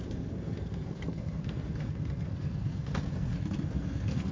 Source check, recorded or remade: remade